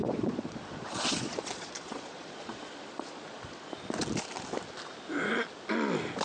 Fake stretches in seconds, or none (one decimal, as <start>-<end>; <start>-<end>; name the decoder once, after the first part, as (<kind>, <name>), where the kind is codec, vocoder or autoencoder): 0.0-3.7 (vocoder, Vocos)